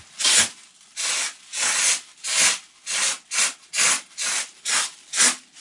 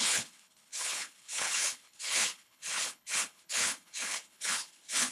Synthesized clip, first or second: second